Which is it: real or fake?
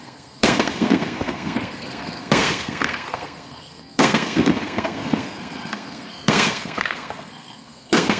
fake